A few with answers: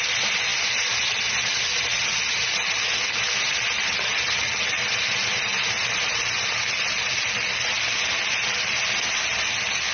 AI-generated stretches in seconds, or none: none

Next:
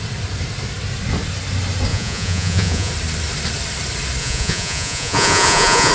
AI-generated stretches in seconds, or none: 1.9-2.9 (vocoder, Vocos); 4.2-5.9

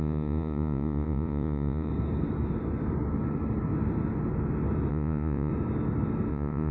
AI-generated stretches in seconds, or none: 0.0-1.9 (vocoder, Vocos); 4.9-5.5; 6.3-6.7

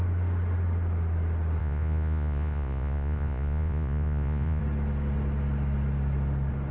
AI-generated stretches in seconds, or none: 1.6-4.6 (vocoder, Vocos)

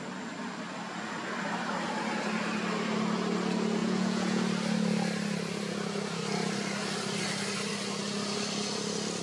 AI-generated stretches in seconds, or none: 3.8-4.4 (vocoder, Vocos)